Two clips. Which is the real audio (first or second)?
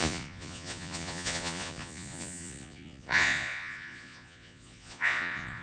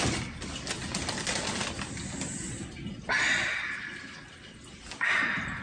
second